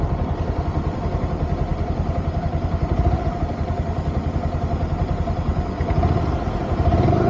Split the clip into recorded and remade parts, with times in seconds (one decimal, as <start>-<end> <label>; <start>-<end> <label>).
0.0-5.5 remade; 5.5-6.4 recorded; 6.4-7.3 remade